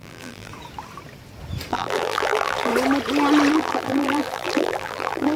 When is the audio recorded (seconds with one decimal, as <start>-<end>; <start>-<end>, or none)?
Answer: 0.5-1.7; 2.7-3.5